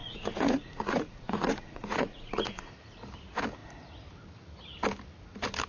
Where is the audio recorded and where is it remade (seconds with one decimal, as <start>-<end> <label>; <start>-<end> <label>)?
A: 0.0-2.7 remade; 2.7-5.7 recorded